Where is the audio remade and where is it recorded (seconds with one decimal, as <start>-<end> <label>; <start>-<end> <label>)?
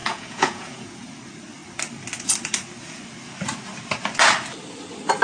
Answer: 0.0-1.1 remade; 1.1-5.2 recorded